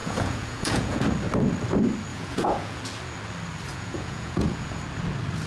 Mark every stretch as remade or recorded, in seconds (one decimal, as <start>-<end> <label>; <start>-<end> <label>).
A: 0.0-1.0 remade; 1.0-2.1 recorded; 2.1-2.8 remade; 2.8-3.7 recorded; 3.7-4.8 remade; 4.8-5.5 recorded